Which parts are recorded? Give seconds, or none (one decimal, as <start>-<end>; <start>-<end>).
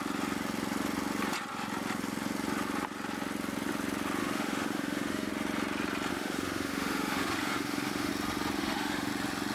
0.0-4.2; 5.3-6.1; 8.1-8.6; 9.1-9.5